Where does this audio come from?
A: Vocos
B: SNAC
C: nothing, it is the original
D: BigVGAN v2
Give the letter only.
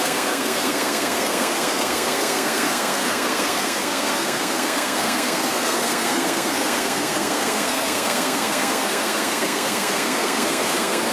B